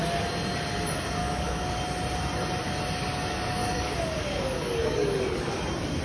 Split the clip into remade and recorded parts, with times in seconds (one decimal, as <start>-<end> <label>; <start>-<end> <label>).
0.0-1.2 recorded; 1.2-1.8 remade; 1.8-3.6 recorded; 3.6-5.6 remade; 5.6-6.0 recorded